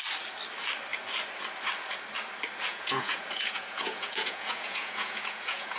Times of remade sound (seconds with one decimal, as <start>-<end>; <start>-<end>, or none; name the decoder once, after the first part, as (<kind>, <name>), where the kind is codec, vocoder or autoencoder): 2.7-5.8 (vocoder, Vocos)